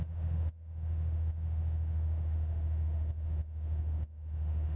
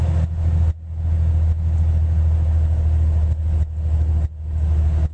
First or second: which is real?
second